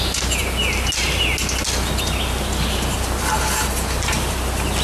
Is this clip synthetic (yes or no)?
no